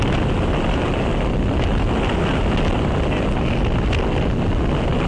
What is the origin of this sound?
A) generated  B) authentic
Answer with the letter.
B